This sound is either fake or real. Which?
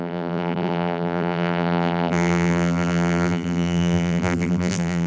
fake